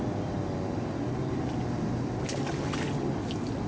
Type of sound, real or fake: real